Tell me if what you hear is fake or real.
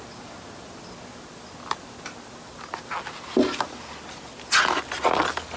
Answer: real